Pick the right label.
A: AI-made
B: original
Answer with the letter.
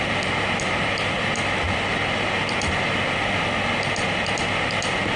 B